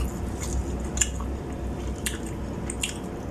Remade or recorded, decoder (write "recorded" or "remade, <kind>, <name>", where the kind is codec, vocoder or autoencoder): recorded